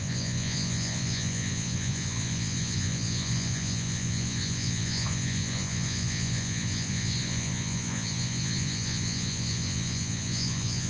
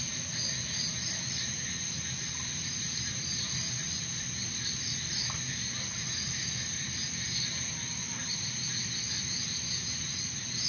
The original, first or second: second